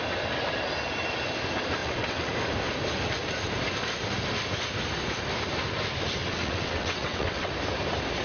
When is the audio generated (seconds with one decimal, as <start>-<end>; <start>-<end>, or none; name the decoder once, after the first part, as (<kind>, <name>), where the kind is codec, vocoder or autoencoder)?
1.8-2.3 (vocoder, WaveNeXt); 6.2-7.5

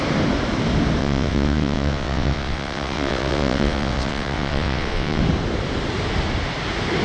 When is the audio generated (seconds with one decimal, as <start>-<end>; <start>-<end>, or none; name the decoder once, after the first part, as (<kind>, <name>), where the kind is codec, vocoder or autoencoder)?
1.0-5.2 (vocoder, WaveNeXt)

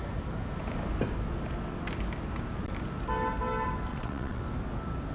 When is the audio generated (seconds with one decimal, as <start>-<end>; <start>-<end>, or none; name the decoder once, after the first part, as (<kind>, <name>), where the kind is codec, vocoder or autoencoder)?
3.9-4.4 (vocoder, WaveNeXt)

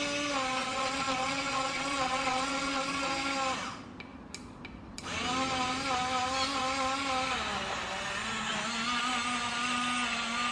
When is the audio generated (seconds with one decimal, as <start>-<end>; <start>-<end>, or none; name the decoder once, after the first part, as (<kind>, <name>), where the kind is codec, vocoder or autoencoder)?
0.6-3.1 (vocoder, WaveNeXt)

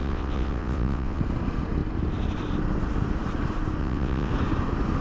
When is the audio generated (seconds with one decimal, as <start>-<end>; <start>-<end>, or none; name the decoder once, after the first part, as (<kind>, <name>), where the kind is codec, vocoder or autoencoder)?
0.0-1.2 (vocoder, WaveNeXt); 3.8-4.3

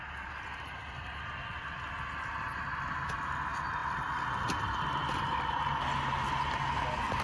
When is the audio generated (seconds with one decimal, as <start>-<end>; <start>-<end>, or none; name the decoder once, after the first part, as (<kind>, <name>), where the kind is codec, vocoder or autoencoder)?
none

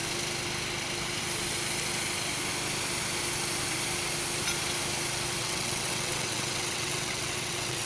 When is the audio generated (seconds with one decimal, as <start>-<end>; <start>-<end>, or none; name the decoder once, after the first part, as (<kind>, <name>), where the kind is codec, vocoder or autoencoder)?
5.4-7.9 (vocoder, WaveNeXt)